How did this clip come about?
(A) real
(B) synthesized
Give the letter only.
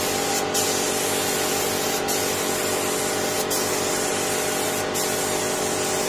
A